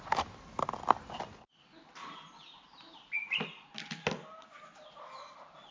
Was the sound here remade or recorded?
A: recorded